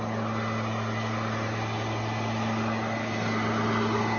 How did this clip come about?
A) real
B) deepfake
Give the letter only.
A